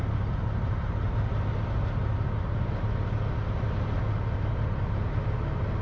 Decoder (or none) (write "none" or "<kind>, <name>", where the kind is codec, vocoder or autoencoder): none